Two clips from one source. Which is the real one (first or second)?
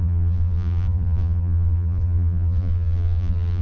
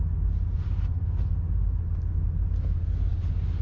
second